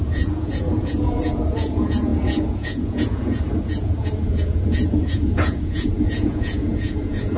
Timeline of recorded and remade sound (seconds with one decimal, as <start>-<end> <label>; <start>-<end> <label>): 0.0-7.4 remade